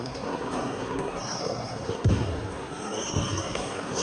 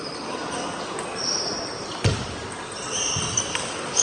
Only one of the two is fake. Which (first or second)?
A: first